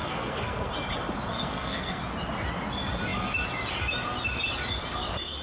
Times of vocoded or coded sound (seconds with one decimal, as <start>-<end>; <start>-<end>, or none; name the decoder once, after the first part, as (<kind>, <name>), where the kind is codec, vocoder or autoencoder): 0.0-0.7 (codec, SNAC); 1.3-2.0